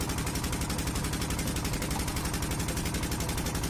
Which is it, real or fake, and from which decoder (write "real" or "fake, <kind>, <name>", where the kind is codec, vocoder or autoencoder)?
real